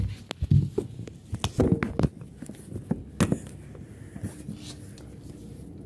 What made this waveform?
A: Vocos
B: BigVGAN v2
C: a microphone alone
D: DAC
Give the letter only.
C